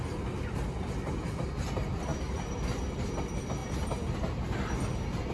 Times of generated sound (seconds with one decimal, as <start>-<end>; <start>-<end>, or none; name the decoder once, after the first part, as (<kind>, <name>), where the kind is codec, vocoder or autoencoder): none